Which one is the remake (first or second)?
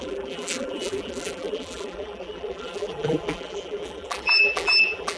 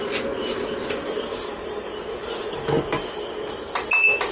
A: first